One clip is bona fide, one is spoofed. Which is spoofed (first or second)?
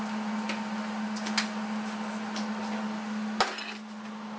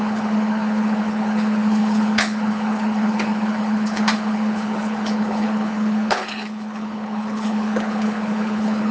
second